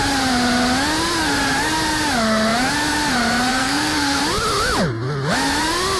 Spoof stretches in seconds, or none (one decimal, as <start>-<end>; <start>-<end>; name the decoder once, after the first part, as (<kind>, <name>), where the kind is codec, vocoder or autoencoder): 3.5-4.2 (codec, SNAC)